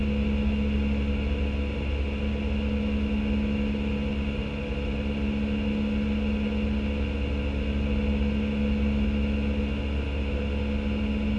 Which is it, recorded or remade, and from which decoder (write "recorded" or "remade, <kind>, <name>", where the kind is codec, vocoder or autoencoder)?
recorded